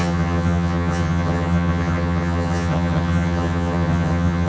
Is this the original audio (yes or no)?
no